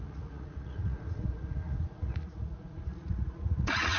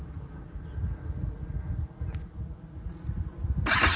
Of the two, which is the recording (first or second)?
second